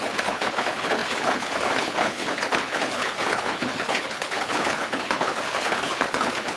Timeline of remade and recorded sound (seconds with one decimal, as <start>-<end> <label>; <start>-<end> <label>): 0.0-6.6 remade